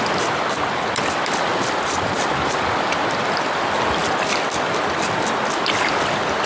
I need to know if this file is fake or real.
real